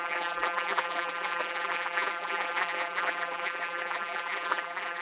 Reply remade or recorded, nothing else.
remade